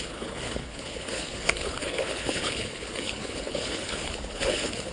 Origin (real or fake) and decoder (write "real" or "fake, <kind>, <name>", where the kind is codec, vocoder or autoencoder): fake, codec, HILCodec